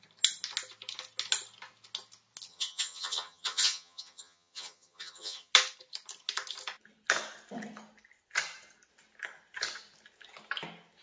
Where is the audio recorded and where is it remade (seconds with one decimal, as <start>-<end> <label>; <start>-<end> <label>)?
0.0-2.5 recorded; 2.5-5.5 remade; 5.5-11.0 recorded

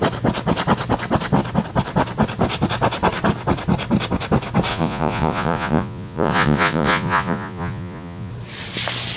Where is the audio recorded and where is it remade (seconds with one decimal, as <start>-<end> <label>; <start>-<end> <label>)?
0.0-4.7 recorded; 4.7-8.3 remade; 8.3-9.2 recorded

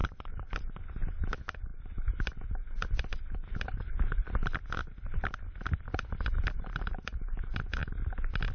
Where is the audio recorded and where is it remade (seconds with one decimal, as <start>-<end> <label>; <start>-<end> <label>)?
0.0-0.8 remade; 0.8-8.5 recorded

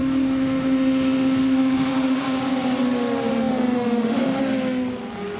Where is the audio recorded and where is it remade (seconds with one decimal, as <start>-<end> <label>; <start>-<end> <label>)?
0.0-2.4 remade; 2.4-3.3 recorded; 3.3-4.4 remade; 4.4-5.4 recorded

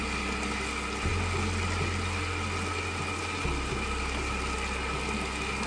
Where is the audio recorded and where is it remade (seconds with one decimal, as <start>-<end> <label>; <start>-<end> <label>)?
0.0-5.7 recorded